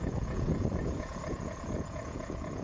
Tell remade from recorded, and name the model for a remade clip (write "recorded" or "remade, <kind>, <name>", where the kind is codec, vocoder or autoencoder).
remade, vocoder, Vocos